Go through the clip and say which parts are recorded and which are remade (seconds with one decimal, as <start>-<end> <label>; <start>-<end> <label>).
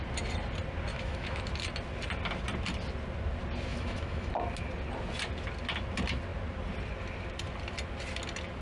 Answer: 0.0-0.9 recorded; 0.9-1.4 remade; 1.4-3.7 recorded; 3.7-4.3 remade; 4.3-8.6 recorded